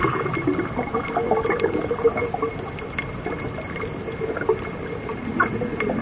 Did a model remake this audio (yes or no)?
no